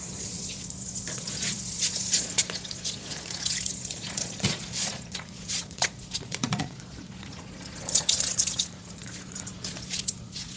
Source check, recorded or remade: remade